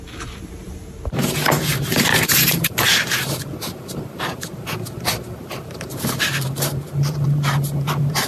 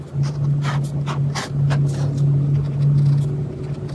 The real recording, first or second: second